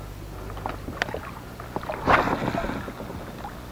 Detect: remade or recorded recorded